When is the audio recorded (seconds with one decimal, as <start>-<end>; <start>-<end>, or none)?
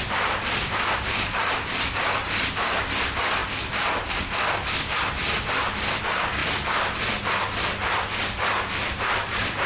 0.0-9.7